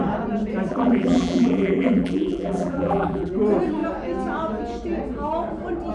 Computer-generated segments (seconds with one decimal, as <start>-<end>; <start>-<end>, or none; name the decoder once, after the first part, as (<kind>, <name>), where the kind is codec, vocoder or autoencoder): 0.7-3.3 (vocoder, BigVGAN v2)